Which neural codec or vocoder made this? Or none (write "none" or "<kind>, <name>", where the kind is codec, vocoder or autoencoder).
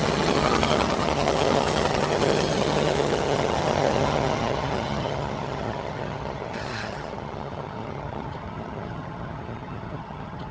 vocoder, HiFi-GAN